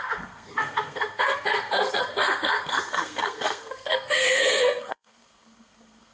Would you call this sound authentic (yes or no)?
no